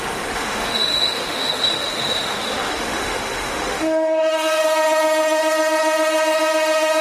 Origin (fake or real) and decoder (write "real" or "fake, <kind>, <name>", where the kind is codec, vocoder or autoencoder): fake, autoencoder, DAC-VAE